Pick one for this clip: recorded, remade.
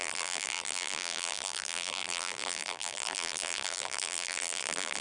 remade